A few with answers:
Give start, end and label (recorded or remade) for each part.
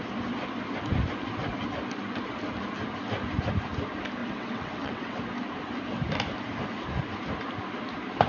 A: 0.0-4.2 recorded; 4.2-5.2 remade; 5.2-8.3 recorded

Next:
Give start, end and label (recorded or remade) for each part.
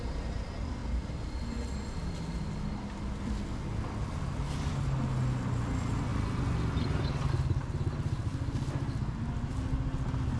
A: 0.0-10.4 recorded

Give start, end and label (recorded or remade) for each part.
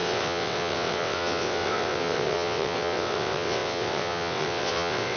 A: 0.0-5.2 remade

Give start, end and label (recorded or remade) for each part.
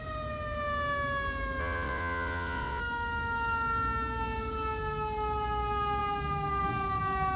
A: 0.0-1.6 recorded; 1.6-2.8 remade; 2.8-7.4 recorded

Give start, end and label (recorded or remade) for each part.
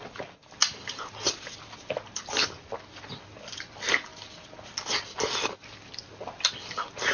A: 0.0-7.1 recorded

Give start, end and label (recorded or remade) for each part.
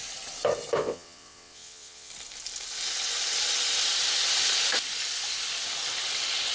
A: 0.0-0.8 recorded; 0.8-2.1 remade; 2.1-6.5 recorded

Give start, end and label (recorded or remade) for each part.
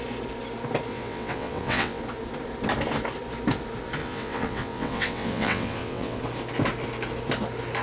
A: 0.0-0.9 recorded; 0.9-2.0 remade; 2.0-4.0 recorded; 4.0-6.2 remade; 6.2-7.8 recorded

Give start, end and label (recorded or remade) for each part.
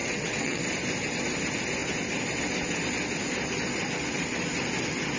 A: 0.0-0.6 remade; 0.6-5.2 recorded